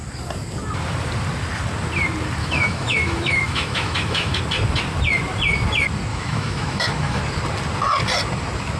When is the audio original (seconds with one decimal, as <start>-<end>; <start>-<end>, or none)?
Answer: 0.0-2.4; 4.4-6.1; 7.2-8.8

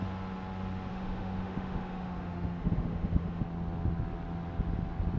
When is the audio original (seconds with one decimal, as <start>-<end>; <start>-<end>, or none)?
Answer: 0.0-0.9; 3.4-5.2